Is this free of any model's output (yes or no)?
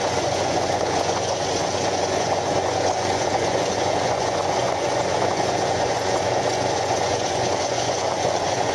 no